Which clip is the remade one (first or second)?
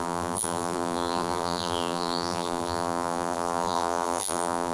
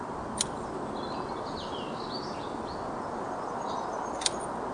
first